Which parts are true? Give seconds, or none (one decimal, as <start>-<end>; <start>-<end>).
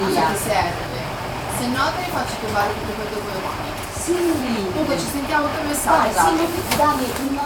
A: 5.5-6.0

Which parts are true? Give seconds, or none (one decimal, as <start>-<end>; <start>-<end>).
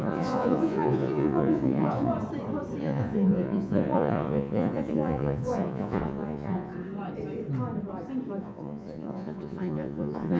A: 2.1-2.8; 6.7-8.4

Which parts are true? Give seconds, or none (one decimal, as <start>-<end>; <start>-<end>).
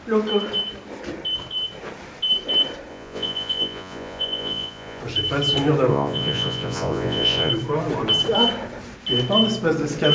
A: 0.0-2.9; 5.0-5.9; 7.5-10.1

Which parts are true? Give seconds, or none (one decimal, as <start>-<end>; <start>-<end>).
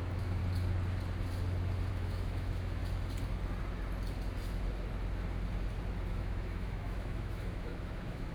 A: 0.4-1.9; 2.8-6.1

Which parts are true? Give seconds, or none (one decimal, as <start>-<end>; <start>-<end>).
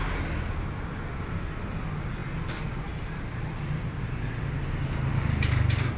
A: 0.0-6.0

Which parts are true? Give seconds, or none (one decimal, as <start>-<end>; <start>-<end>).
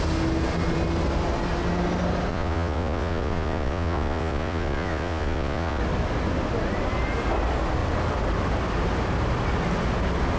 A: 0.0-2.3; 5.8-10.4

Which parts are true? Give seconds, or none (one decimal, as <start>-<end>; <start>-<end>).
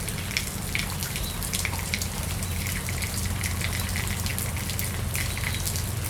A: 0.0-1.0; 3.5-6.1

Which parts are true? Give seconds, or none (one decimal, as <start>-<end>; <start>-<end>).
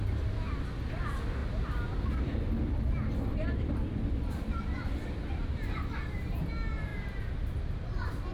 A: 0.0-1.4; 5.9-8.3